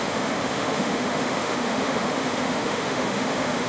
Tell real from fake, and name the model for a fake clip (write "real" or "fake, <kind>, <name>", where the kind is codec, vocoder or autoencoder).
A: fake, autoencoder, DAC-VAE